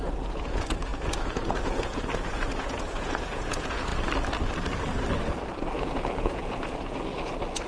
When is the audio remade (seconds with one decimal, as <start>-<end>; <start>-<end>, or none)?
0.0-3.9; 5.7-7.1